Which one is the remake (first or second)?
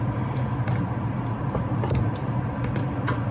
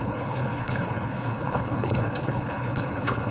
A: second